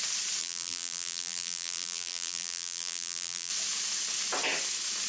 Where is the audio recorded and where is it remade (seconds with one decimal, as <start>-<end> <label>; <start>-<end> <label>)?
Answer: 0.0-0.4 recorded; 0.4-3.5 remade; 3.5-5.1 recorded